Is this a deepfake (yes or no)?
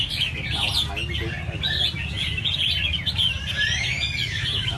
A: no